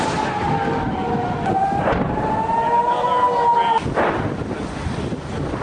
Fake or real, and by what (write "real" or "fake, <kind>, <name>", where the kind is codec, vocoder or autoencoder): real